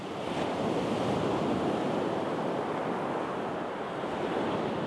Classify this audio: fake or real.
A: real